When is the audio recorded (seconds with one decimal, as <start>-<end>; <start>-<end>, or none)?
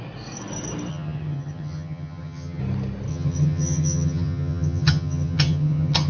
0.0-0.9; 2.6-3.1